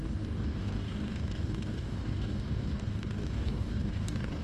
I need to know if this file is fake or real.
fake